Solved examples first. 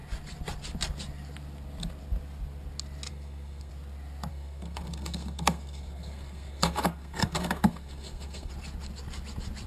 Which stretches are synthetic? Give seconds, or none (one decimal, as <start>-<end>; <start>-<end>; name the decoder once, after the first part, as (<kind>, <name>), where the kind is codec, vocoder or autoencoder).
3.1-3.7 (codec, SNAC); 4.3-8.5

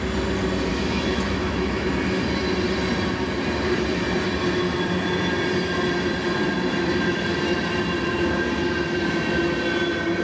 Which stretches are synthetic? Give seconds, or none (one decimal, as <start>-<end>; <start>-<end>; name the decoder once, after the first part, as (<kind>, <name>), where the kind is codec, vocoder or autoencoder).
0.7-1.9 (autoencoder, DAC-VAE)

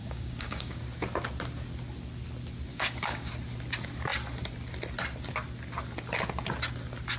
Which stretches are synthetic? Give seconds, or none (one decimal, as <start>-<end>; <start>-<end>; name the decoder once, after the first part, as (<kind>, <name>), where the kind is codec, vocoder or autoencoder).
0.0-0.8 (codec, DAC); 2.7-3.3